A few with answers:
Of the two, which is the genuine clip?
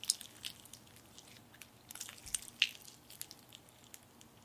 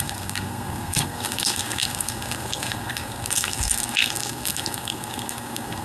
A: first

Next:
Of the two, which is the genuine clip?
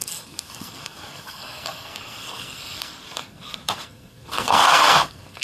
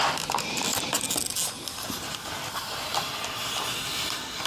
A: second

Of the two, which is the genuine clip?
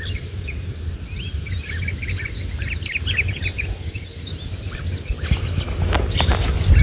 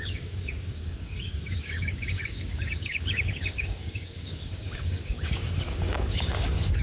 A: first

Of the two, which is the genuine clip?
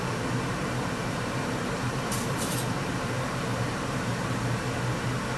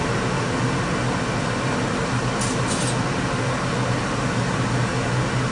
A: second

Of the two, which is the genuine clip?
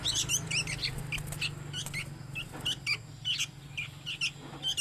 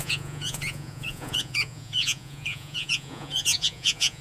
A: first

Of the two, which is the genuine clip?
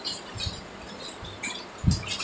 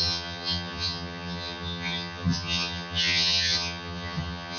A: first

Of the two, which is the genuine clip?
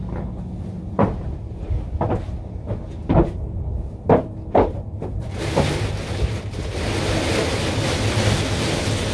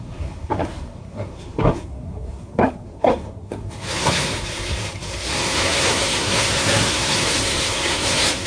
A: first